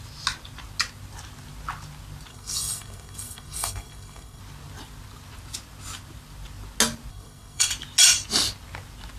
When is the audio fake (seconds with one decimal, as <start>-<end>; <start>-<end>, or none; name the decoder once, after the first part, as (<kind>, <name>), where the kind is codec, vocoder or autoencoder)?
2.3-4.4 (codec, SNAC); 7.1-7.7